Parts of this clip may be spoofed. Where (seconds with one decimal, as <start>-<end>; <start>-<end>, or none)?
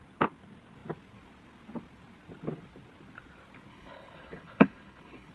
3.7-5.3